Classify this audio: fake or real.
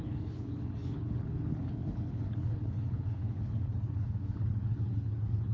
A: fake